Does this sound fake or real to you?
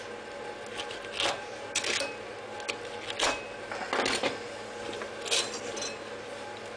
real